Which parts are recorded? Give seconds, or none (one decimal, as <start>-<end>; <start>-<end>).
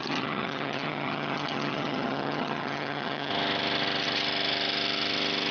3.3-5.5